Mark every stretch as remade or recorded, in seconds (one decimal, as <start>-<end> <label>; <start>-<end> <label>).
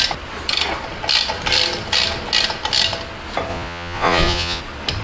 0.0-3.5 recorded; 3.5-4.6 remade; 4.6-5.0 recorded